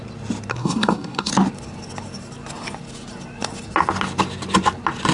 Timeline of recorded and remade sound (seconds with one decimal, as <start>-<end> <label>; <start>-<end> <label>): 0.0-0.5 recorded; 0.5-1.3 remade; 1.3-5.1 recorded